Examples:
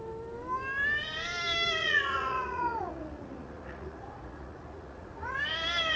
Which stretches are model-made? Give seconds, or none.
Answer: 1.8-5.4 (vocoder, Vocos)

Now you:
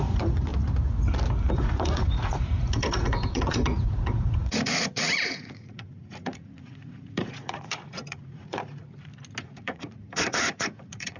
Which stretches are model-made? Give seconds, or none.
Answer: 0.0-0.5 (vocoder, Vocos); 1.5-8.8; 9.4-11.2